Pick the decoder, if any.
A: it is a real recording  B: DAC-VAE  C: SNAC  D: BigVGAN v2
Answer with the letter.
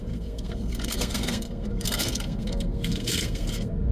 C